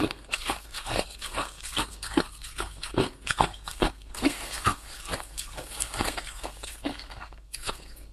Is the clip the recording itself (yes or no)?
no